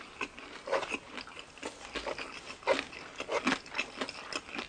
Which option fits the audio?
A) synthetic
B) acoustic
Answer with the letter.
B